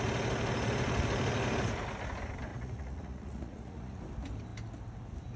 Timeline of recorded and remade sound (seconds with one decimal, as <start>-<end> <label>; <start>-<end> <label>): 0.0-2.5 recorded; 2.5-4.0 remade; 4.0-5.4 recorded